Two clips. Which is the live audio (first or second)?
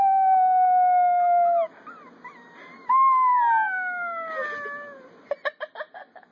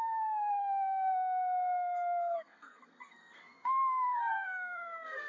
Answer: first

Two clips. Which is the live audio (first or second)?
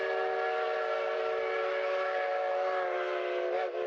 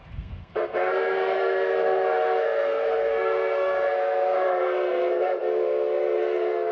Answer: first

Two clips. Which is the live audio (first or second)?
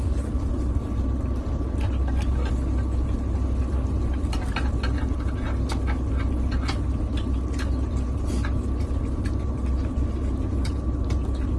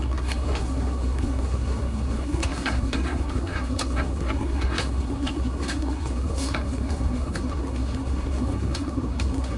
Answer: first